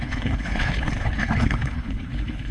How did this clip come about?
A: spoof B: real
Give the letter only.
A